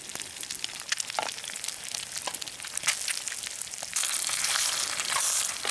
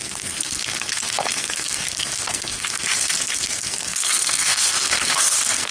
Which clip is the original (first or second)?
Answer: first